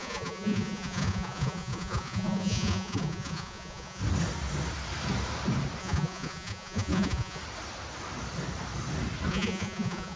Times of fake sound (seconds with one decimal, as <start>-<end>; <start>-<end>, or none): 0.0-4.0; 5.8-7.4; 9.3-10.2